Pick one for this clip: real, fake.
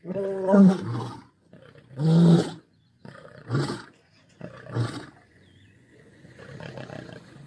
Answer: fake